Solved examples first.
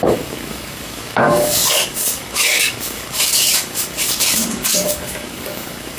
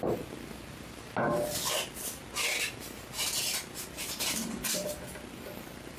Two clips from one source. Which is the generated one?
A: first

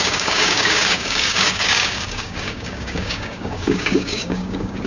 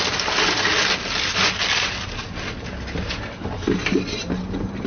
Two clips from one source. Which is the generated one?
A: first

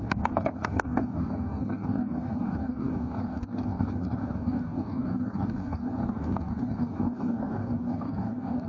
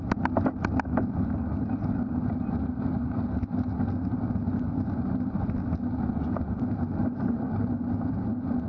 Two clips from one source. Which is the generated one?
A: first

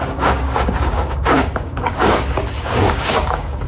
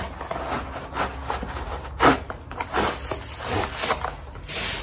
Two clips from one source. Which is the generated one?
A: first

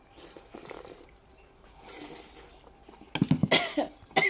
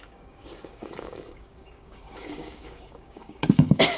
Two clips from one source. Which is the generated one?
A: second